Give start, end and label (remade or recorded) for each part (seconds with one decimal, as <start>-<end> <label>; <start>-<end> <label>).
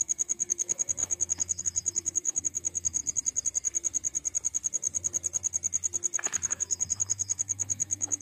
0.0-3.0 remade; 3.0-6.5 recorded; 6.5-8.2 remade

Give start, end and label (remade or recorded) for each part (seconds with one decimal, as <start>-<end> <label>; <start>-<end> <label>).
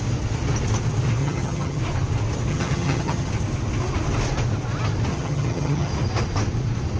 0.0-1.2 recorded; 1.2-1.8 remade; 1.8-2.5 recorded; 2.5-3.3 remade; 3.3-5.1 recorded; 5.1-5.9 remade; 5.9-7.0 recorded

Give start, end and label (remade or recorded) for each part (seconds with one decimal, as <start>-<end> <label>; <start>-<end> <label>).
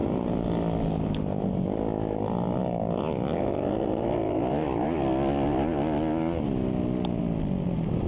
0.0-8.1 recorded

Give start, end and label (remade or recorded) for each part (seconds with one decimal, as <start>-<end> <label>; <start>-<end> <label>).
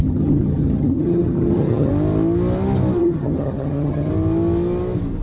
0.0-1.9 remade; 1.9-3.0 recorded; 3.0-4.1 remade; 4.1-5.2 recorded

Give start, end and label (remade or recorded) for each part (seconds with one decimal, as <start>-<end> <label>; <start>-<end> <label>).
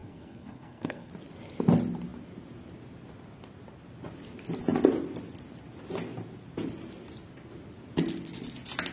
0.0-1.1 remade; 1.1-8.9 recorded